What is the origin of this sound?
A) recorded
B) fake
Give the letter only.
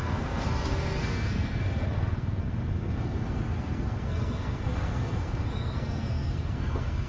B